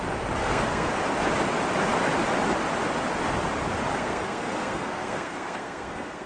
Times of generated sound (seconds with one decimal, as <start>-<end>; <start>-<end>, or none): 0.4-0.9; 3.9-6.3